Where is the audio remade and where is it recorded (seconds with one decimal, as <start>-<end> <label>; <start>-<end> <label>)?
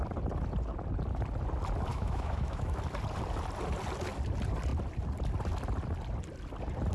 0.0-1.9 recorded; 1.9-2.8 remade; 2.8-6.9 recorded